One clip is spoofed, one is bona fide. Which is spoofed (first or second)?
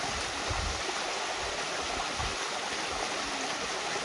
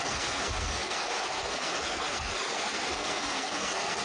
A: second